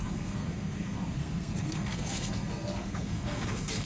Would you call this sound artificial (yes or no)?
yes